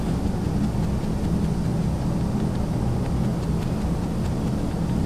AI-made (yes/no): no